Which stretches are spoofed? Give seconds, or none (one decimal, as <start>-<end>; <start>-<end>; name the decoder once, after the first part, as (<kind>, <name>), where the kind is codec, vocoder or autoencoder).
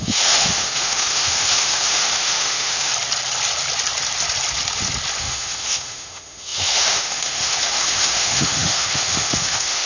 0.0-2.9 (autoencoder, DAC-VAE); 5.2-9.9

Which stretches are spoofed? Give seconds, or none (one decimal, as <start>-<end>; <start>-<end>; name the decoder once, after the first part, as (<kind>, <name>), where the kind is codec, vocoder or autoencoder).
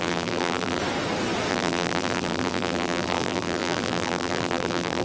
0.0-0.8 (vocoder, BigVGAN v2); 1.5-5.0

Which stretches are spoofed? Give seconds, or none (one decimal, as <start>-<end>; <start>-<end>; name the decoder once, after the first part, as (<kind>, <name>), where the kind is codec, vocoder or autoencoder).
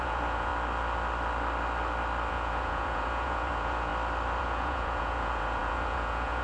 0.0-0.5 (vocoder, Vocos); 2.3-3.9; 4.4-6.4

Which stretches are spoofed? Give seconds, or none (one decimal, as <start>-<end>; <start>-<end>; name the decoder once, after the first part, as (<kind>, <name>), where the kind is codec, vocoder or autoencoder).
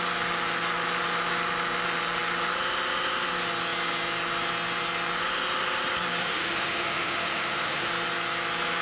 6.2-7.9 (autoencoder, DAC-VAE)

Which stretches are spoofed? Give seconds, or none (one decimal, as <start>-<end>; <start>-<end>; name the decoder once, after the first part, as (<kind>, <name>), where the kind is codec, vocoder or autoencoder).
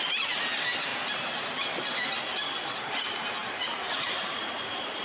none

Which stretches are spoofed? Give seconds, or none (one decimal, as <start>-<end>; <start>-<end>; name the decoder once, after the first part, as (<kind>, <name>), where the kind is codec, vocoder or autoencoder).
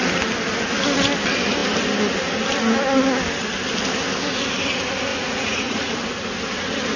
5.1-6.0 (vocoder, Vocos)